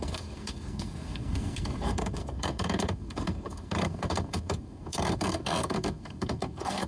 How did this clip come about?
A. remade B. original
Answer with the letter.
A